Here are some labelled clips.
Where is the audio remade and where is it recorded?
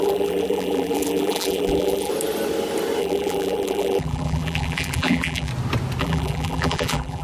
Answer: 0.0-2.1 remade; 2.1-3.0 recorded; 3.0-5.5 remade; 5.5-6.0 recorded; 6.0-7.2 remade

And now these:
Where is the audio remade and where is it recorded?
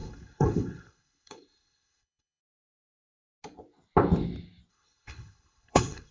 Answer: 0.0-2.4 remade; 2.4-4.7 recorded; 4.7-6.1 remade